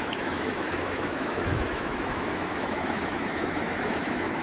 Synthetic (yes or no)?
yes